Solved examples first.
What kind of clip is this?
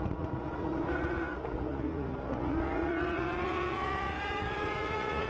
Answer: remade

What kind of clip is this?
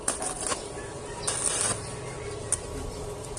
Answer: recorded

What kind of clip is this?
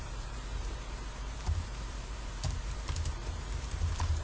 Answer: remade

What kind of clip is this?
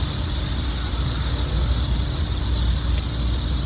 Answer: recorded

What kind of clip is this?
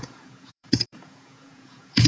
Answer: remade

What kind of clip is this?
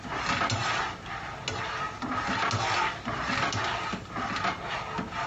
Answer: recorded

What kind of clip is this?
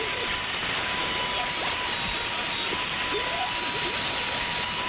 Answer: recorded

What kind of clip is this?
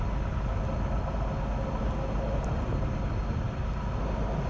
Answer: recorded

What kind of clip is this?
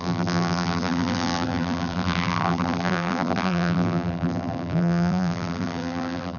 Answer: remade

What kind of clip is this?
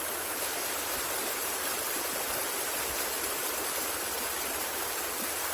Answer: remade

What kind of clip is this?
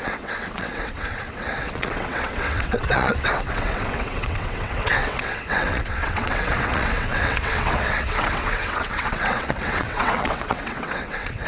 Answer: remade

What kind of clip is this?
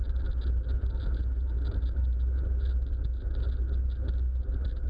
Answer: recorded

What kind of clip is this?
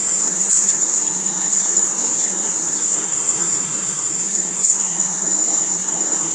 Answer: remade